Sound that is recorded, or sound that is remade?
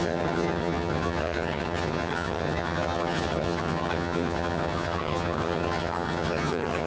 remade